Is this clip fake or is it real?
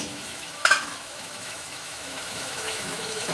fake